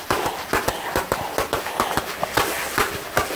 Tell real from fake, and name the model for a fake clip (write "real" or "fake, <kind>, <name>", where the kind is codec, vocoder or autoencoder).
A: fake, vocoder, BigVGAN v2